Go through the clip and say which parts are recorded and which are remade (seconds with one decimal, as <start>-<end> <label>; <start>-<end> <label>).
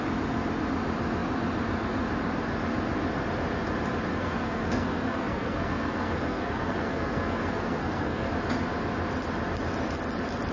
0.0-4.1 recorded; 4.1-8.3 remade; 8.3-10.5 recorded